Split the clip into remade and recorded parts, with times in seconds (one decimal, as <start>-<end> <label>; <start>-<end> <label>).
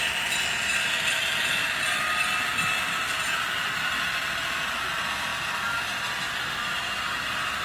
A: 0.0-7.6 recorded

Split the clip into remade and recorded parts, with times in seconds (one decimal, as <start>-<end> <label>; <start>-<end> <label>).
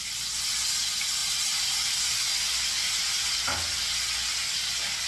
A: 0.0-5.1 recorded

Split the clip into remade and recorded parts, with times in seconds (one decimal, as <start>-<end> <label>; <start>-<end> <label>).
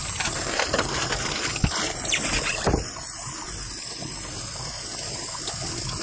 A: 0.0-1.0 remade; 1.0-6.0 recorded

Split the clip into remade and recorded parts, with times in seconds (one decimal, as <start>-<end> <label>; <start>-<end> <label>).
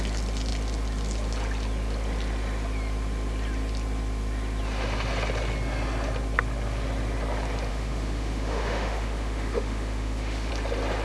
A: 0.0-7.7 recorded; 7.7-10.5 remade; 10.5-11.0 recorded